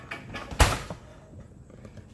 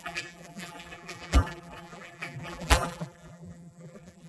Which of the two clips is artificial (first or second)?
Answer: second